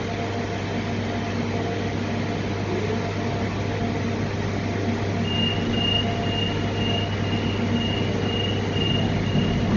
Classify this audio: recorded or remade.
recorded